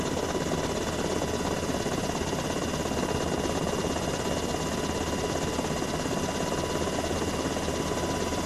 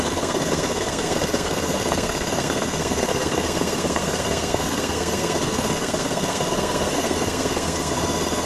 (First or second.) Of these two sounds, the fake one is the second